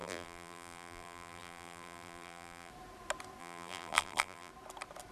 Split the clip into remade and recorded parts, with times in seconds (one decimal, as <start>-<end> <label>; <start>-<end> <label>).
0.0-2.7 remade; 2.7-3.4 recorded; 3.4-4.5 remade; 4.5-5.1 recorded